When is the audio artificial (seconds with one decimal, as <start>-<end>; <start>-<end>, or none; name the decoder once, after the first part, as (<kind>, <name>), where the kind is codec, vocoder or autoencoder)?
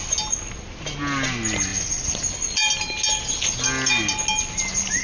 none